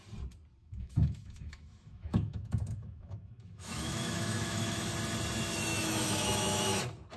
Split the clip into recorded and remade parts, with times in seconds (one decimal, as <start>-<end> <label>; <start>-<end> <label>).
0.0-0.6 recorded; 0.6-4.9 remade; 4.9-5.7 recorded; 5.7-6.8 remade; 6.8-7.2 recorded